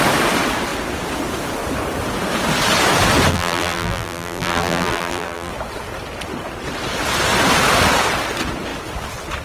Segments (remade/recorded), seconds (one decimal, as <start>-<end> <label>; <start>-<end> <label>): 0.0-3.3 recorded; 3.3-5.5 remade; 5.5-9.4 recorded